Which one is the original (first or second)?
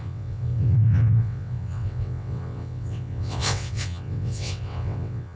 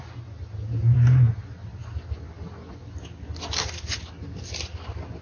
second